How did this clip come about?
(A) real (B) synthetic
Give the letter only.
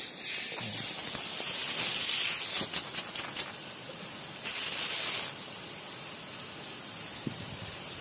A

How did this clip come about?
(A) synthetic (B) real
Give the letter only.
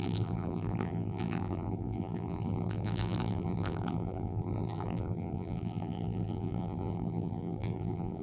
A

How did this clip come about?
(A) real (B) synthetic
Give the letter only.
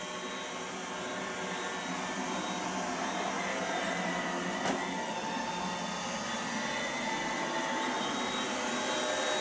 A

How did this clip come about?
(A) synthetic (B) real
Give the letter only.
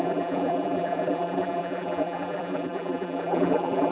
A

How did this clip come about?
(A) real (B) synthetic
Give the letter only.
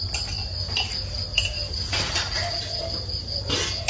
A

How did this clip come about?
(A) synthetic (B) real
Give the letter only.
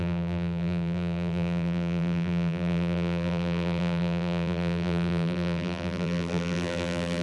A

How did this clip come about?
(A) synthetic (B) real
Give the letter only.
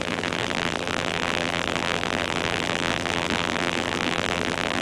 A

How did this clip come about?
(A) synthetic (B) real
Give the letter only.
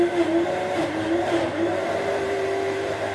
A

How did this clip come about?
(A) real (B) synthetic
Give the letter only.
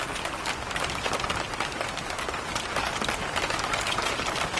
A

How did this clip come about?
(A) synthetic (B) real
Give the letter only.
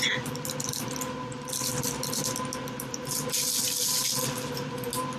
B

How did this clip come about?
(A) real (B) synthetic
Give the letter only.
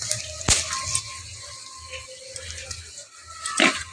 A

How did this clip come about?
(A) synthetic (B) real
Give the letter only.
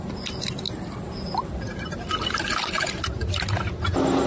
B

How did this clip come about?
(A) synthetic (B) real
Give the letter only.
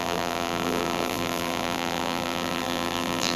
A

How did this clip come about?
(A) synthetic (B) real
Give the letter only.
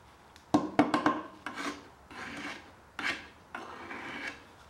B